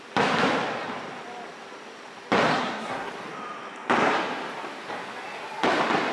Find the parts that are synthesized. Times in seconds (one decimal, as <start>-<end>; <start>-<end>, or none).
2.5-3.1